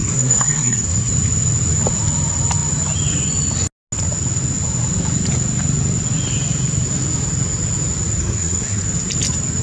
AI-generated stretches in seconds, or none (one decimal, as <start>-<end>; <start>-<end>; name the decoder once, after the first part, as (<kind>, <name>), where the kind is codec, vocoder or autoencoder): 0.0-1.1 (codec, SNAC); 8.2-8.8